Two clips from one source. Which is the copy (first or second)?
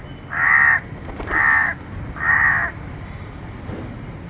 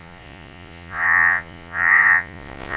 second